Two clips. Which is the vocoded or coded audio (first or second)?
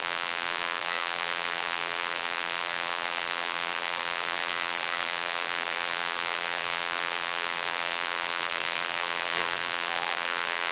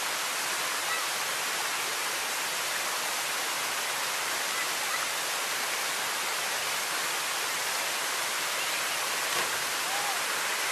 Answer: first